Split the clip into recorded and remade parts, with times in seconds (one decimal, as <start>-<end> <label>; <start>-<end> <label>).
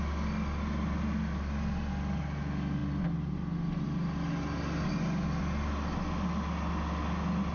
0.0-7.5 recorded